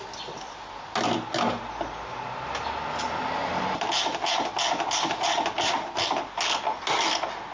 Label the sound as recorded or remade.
recorded